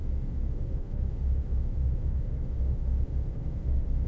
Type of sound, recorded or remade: remade